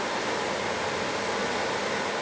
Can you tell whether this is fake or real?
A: real